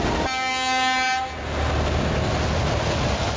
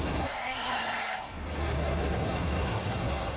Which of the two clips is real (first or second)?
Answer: first